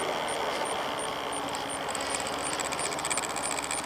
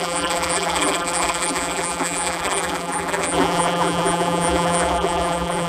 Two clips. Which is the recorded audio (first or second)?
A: first